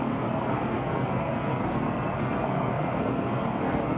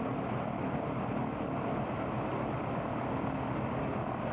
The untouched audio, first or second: second